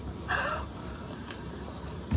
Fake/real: fake